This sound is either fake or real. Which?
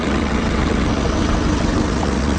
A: fake